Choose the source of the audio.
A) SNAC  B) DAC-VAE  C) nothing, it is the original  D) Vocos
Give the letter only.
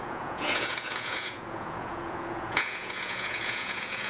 D